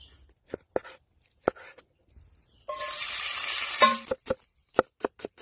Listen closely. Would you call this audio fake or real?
real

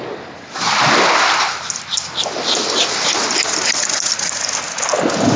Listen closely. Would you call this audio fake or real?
real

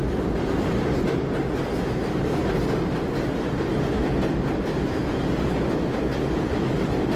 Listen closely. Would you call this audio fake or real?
real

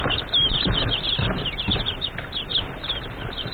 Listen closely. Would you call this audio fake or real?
real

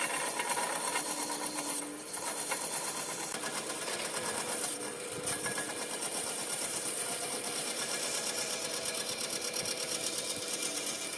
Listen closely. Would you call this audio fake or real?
fake